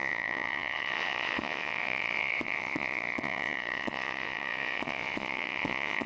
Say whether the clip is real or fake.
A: fake